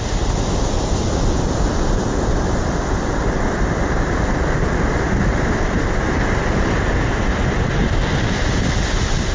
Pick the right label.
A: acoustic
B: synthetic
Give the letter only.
A